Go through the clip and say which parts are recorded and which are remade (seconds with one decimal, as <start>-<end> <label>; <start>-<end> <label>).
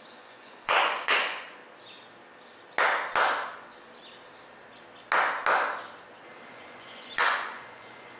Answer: 0.0-1.6 remade; 1.6-6.5 recorded; 6.5-8.2 remade